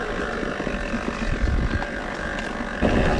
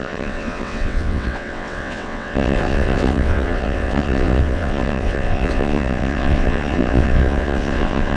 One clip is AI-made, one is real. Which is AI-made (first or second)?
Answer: second